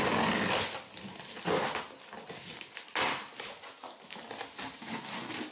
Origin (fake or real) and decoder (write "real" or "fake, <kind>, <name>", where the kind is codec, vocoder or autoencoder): real